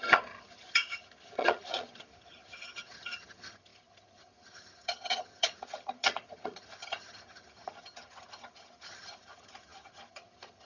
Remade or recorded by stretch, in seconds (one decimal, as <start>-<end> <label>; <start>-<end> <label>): 0.0-10.7 remade